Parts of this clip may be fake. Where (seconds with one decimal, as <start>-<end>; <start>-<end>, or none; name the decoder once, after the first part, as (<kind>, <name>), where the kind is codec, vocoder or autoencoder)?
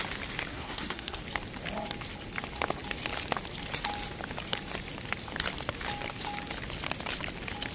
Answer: 0.5-1.2 (codec, SNAC)